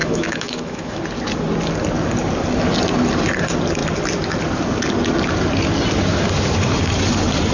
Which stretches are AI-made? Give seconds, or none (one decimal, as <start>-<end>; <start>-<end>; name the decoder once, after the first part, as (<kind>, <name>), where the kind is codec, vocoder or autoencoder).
0.0-1.0 (autoencoder, DAC-VAE)